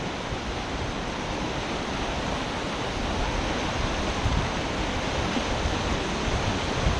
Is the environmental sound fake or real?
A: real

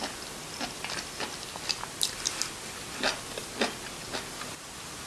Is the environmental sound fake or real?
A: real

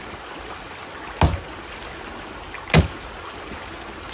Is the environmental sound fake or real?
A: real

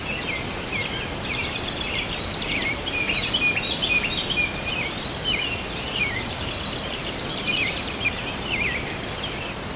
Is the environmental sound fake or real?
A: fake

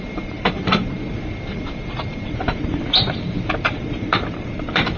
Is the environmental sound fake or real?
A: fake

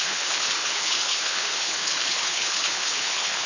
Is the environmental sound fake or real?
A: fake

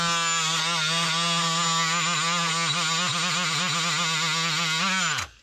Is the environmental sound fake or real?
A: real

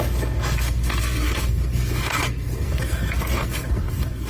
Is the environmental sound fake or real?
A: fake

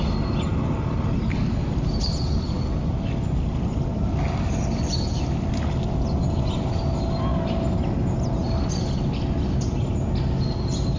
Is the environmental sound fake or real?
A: real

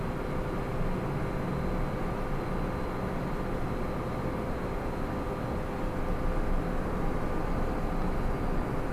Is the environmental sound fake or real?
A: real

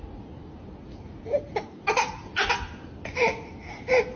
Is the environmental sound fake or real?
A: real